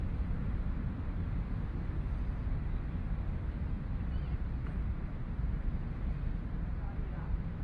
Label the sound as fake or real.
fake